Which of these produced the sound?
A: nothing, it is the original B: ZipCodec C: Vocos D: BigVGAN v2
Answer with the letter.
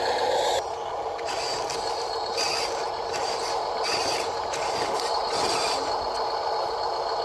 A